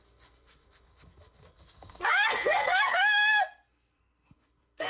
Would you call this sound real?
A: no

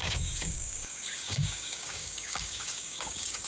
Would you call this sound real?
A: no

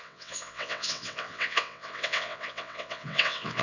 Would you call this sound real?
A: no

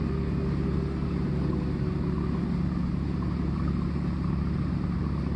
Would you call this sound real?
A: yes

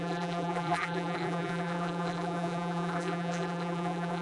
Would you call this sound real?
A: no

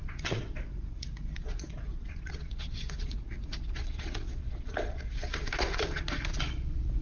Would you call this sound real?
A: no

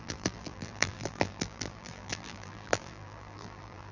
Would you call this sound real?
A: no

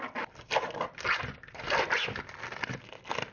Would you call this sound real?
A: yes